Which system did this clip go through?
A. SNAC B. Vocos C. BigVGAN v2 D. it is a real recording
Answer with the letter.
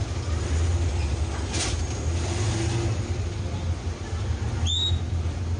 D